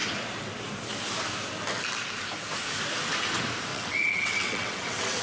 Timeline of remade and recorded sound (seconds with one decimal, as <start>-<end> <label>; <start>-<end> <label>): 0.0-3.7 recorded; 3.7-5.2 remade

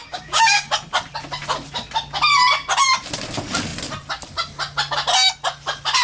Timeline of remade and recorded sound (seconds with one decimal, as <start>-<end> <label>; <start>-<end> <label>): 0.0-0.7 remade; 0.7-6.0 recorded